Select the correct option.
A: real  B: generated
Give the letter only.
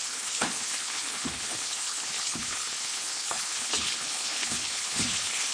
B